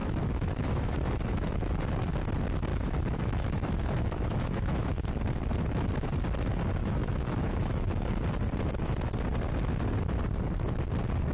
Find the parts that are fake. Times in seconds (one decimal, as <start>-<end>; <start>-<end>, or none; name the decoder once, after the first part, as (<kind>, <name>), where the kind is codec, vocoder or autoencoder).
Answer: 0.0-1.7 (autoencoder, DAC-VAE); 2.7-5.1; 6.8-8.1